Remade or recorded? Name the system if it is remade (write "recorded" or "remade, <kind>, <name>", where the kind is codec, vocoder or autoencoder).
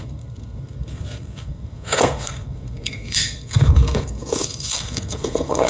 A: remade, codec, SNAC